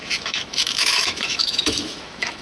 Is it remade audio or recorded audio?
remade